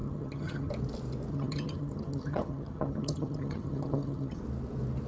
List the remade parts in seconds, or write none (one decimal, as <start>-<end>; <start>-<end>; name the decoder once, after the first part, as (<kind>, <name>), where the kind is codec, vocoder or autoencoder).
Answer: 0.0-0.7 (vocoder, HiFi-GAN); 1.3-4.4